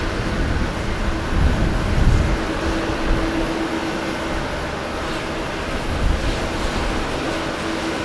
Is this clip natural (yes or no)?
yes